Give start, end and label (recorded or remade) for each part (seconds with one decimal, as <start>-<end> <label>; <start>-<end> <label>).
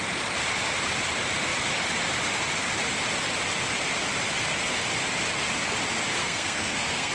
0.0-6.2 recorded; 6.2-7.1 remade